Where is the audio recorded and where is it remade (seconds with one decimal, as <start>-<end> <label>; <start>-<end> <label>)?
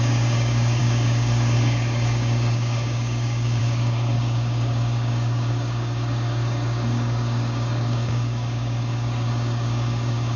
0.0-10.4 remade